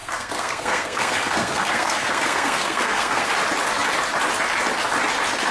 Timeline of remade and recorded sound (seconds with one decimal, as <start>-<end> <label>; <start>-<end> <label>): 0.0-3.3 remade; 3.3-5.5 recorded